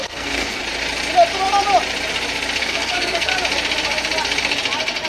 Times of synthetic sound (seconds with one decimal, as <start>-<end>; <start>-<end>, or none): 0.0-0.6; 2.6-3.3